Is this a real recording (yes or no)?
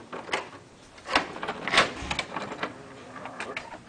yes